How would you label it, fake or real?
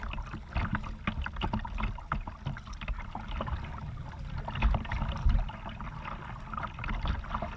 real